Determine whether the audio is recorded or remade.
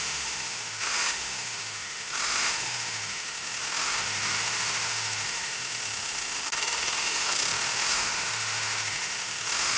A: remade